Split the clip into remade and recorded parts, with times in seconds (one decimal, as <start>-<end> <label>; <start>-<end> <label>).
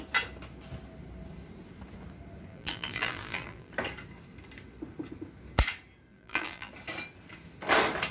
0.0-2.5 recorded; 2.5-3.7 remade; 3.7-6.1 recorded; 6.1-6.7 remade; 6.7-8.1 recorded